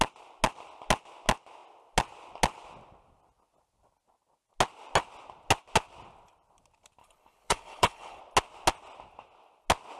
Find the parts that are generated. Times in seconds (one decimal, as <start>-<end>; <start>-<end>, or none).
7.0-8.2